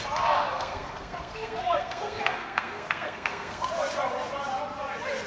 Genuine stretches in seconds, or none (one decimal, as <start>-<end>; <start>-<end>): 0.0-0.5; 3.7-5.3